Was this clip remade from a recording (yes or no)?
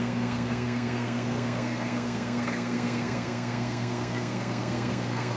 yes